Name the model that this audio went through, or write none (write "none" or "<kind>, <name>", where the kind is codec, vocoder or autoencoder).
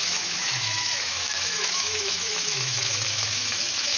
autoencoder, DAC-VAE